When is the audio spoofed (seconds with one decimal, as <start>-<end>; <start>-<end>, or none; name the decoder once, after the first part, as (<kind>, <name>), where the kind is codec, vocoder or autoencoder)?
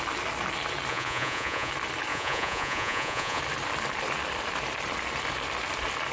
0.9-1.7 (vocoder, Vocos); 2.1-3.4